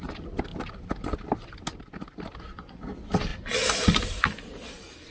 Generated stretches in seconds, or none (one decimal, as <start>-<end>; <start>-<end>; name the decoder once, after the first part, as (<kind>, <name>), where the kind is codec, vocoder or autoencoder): none

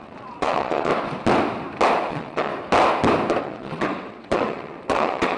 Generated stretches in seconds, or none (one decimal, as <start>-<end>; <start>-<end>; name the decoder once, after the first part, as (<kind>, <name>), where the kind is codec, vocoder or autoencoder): 0.0-0.9 (vocoder, WaveNeXt); 2.1-2.5; 3.4-5.4

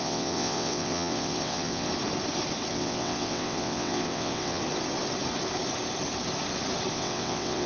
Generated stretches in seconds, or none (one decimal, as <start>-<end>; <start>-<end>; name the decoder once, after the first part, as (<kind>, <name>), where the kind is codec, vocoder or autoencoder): 0.0-1.9 (vocoder, WaveNeXt); 2.7-4.6; 6.9-7.7